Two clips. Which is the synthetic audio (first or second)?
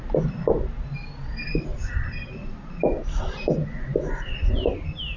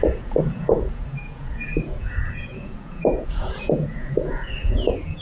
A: second